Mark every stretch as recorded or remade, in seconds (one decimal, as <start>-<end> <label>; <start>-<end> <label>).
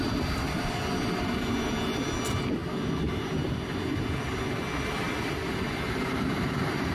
0.0-6.9 recorded